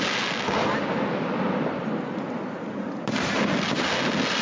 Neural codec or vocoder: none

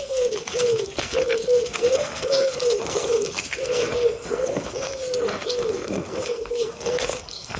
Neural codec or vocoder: codec, SNAC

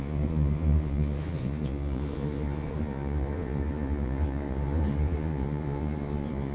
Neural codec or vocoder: vocoder, Vocos